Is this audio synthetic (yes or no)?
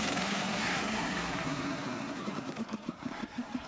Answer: yes